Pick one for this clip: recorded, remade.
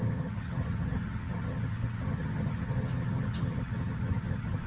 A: remade